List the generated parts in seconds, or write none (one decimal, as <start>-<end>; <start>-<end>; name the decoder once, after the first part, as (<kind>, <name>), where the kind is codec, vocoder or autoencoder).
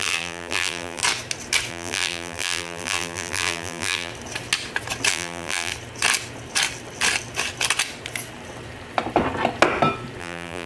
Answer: 0.0-1.0 (vocoder, BigVGAN v2); 1.7-4.1; 5.1-5.7; 10.2-10.7